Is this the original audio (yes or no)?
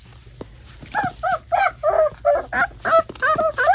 yes